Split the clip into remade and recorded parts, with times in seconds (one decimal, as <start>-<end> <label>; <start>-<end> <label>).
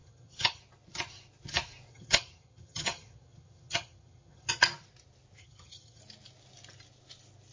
0.0-0.6 remade; 0.6-1.9 recorded; 1.9-4.5 remade; 4.5-5.4 recorded; 5.4-6.0 remade; 6.0-7.5 recorded